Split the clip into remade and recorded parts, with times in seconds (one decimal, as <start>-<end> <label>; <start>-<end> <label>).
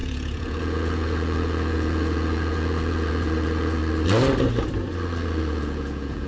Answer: 0.0-3.8 remade; 3.8-5.4 recorded; 5.4-6.3 remade